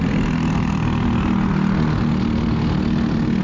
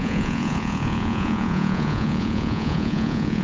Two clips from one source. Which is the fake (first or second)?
second